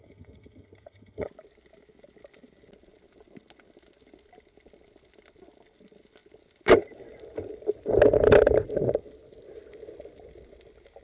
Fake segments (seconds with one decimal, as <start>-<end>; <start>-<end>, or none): 0.0-1.3